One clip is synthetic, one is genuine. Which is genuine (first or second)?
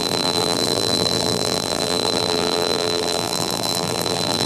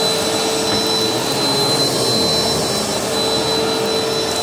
second